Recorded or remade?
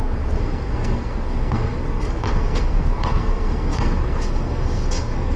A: remade